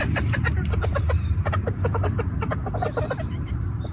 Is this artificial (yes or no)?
yes